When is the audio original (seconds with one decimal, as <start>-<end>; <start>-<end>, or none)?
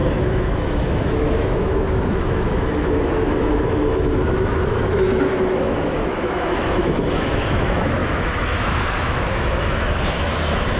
none